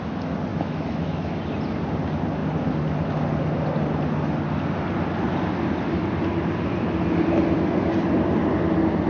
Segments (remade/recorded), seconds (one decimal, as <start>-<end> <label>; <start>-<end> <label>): 0.0-0.5 recorded; 0.5-1.4 remade; 1.4-9.1 recorded